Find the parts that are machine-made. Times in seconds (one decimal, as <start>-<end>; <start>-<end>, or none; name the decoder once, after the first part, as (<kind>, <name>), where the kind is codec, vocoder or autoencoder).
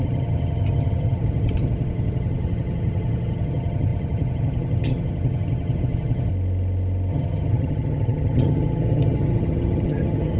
0.0-6.3 (vocoder, HiFi-GAN); 7.1-10.4